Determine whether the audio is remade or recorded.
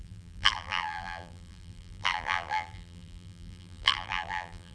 remade